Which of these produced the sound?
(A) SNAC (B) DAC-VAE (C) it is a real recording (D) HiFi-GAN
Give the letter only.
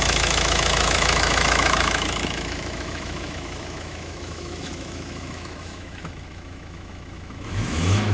B